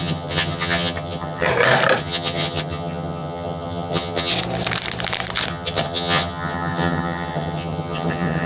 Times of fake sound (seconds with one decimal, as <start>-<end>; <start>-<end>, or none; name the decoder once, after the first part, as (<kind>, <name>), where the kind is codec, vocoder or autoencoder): 0.0-1.5 (vocoder, HiFi-GAN); 2.0-4.3; 5.5-8.5